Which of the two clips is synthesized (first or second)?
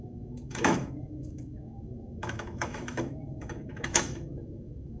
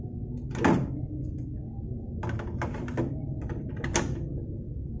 first